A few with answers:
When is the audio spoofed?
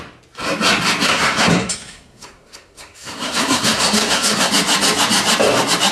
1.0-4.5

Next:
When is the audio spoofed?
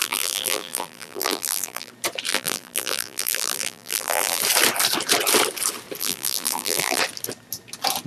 0.0-1.9; 2.3-4.4; 6.0-7.0